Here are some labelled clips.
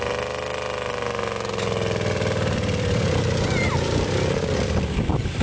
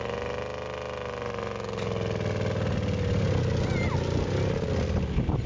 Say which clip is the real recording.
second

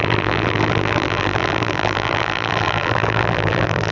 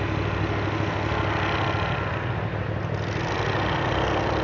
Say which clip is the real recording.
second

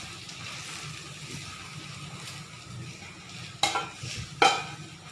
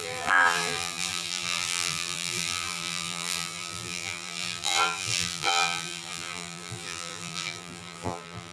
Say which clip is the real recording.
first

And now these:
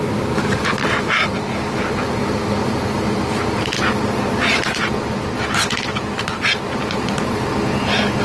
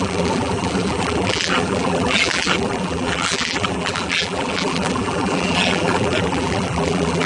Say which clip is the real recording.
first